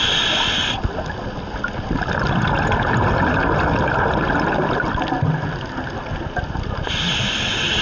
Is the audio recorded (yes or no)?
yes